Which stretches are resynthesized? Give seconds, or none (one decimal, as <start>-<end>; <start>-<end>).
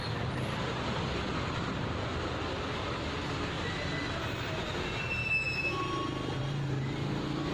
5.2-5.8